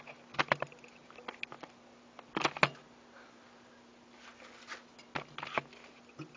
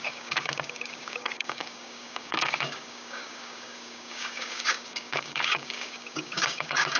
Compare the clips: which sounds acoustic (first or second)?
first